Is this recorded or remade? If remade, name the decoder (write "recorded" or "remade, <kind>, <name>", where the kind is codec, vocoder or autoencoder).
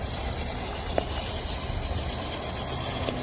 recorded